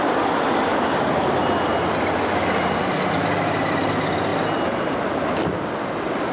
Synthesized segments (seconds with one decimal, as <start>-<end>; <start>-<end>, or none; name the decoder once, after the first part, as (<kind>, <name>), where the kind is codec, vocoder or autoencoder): none